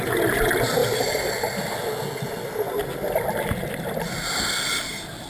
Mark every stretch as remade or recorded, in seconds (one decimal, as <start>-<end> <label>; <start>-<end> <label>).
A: 0.0-5.3 recorded